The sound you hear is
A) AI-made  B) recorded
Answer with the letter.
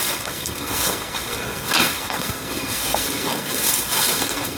A